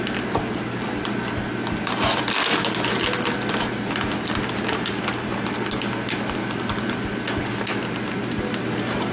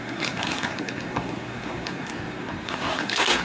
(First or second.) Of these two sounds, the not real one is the second